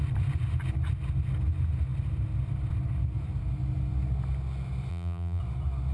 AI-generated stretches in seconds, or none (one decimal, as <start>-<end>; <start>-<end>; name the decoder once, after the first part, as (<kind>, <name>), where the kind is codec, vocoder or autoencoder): 4.9-5.4 (vocoder, BigVGAN v2)

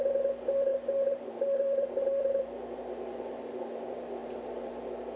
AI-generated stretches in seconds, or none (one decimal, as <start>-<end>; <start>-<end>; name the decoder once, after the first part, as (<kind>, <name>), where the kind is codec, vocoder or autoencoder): 0.7-3.8 (vocoder, BigVGAN v2); 4.2-4.7

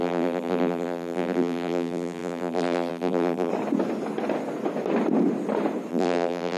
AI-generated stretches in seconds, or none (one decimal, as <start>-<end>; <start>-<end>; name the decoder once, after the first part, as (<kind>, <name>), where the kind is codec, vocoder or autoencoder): 0.0-3.5 (vocoder, BigVGAN v2); 5.9-6.6

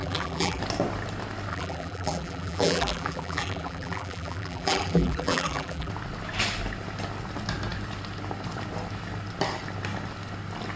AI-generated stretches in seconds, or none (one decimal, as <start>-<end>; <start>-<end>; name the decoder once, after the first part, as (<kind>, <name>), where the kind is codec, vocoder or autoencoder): 0.0-0.6 (vocoder, BigVGAN v2); 1.5-5.9

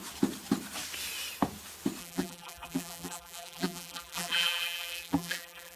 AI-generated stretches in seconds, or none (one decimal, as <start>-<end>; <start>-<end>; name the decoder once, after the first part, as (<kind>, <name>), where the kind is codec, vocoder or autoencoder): 2.0-5.8 (vocoder, BigVGAN v2)